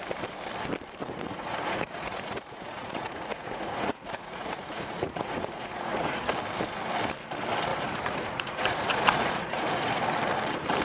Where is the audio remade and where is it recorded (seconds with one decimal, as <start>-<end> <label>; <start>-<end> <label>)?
0.0-1.0 recorded; 1.0-6.2 remade; 6.2-7.7 recorded; 7.7-10.0 remade; 10.0-10.8 recorded